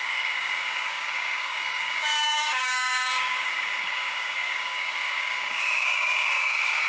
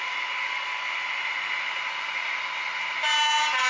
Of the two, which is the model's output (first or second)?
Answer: first